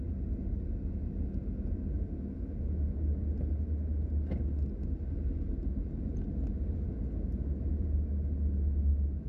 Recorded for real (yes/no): yes